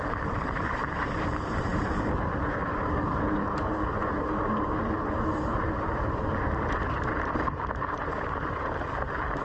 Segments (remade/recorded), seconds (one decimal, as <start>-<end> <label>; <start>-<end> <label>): 0.0-9.4 remade